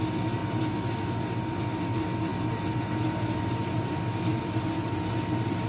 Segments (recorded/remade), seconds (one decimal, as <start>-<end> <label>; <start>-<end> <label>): 0.0-0.4 recorded; 0.4-1.2 remade; 1.2-3.6 recorded; 3.6-5.2 remade; 5.2-5.7 recorded

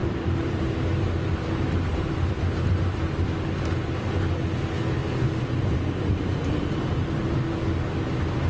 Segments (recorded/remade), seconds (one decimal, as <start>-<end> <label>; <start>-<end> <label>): 0.0-1.3 remade; 1.3-1.9 recorded; 1.9-3.0 remade; 3.0-5.0 recorded; 5.0-7.1 remade; 7.1-8.5 recorded

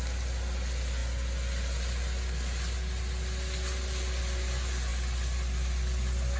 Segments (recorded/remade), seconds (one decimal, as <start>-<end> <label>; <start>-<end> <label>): 0.0-6.4 recorded

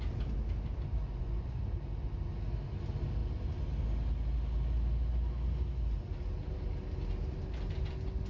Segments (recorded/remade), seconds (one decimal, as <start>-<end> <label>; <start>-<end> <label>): 0.0-1.1 recorded; 1.1-1.6 remade; 1.6-8.3 recorded

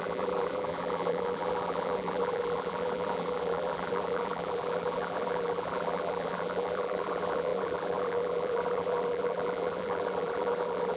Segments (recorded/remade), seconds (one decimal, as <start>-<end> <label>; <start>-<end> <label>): 0.0-11.0 remade

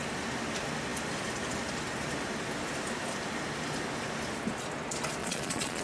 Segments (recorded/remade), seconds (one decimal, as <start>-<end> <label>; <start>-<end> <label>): 0.0-5.2 recorded; 5.2-5.8 remade

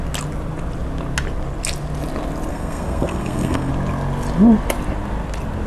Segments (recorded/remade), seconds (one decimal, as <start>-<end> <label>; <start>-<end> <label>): 0.0-2.5 recorded; 2.5-3.7 remade; 3.7-5.7 recorded